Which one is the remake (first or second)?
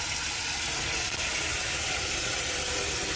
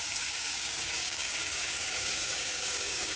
second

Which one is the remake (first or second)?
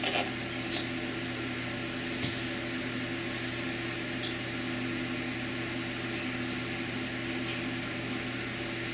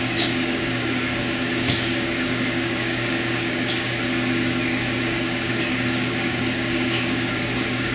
second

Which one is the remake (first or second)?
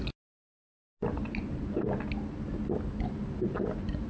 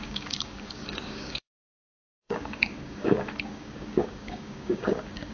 second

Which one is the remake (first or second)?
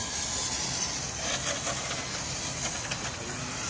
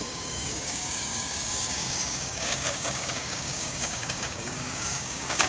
second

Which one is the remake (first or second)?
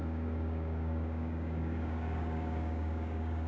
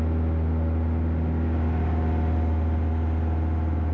first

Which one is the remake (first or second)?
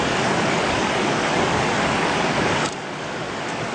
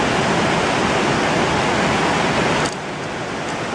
first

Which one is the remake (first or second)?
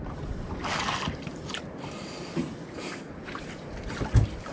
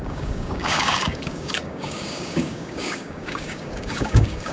second